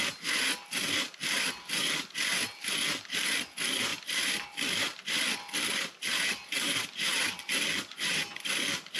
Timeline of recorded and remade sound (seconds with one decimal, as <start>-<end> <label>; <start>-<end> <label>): 0.0-3.9 recorded; 3.9-8.1 remade; 8.1-9.0 recorded